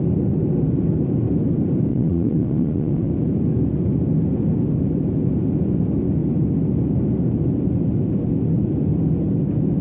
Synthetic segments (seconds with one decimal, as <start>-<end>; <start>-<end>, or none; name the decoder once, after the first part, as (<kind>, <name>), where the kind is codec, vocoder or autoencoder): 1.9-3.1 (vocoder, Vocos)

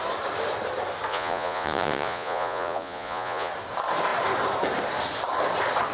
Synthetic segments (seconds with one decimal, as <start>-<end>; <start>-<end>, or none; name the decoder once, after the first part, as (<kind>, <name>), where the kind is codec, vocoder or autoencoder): 1.1-3.5 (vocoder, Vocos)